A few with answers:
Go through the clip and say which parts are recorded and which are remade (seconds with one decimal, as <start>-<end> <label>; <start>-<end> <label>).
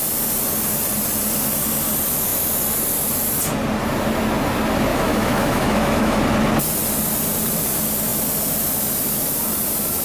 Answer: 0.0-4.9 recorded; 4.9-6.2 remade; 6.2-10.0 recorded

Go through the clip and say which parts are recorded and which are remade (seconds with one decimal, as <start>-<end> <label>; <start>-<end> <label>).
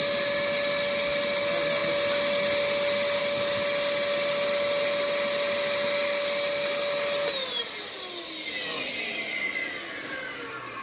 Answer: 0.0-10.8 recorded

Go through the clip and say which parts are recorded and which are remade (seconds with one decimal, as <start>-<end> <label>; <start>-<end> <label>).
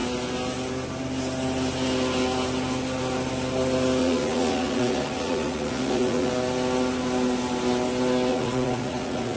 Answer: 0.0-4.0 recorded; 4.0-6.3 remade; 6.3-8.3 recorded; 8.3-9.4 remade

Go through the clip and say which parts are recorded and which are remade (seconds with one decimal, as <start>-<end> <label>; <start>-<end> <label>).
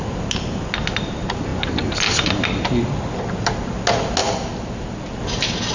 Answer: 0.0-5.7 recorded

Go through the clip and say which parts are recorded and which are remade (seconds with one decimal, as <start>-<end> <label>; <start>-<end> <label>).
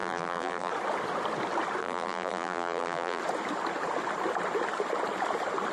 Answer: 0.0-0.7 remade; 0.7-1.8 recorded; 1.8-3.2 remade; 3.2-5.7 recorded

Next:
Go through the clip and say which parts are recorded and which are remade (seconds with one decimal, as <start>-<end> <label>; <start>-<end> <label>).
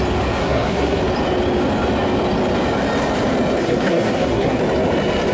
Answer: 0.0-0.4 recorded; 0.4-1.0 remade; 1.0-3.6 recorded; 3.6-4.6 remade; 4.6-5.3 recorded